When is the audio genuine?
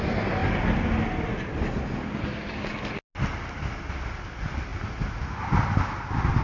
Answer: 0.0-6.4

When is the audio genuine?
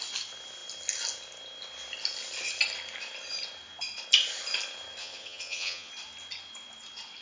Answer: 0.0-5.0; 5.9-7.2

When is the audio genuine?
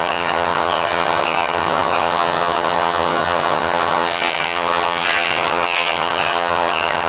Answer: none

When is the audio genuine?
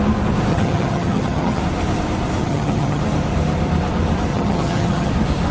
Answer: 0.0-0.5; 1.6-2.4; 3.0-4.3; 5.1-5.5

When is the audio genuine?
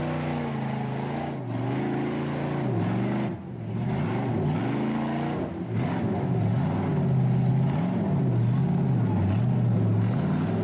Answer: 0.0-10.6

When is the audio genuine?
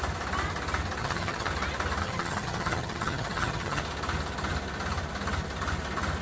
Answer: 0.0-1.0; 1.5-2.0; 3.8-6.2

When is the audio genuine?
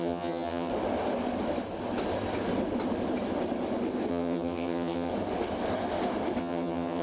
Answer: 0.7-4.1; 5.1-6.4